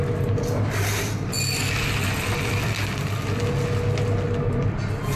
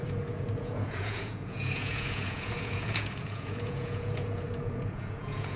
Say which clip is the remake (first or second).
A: second